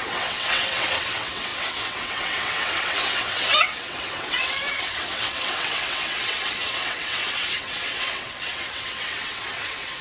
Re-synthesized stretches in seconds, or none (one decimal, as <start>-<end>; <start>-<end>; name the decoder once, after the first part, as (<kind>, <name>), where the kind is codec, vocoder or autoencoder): 0.0-10.0 (vocoder, WaveNeXt)